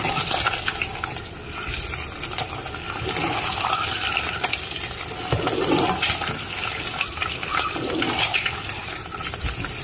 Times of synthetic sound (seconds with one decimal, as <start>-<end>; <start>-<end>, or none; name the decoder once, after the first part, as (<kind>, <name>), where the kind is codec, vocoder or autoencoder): none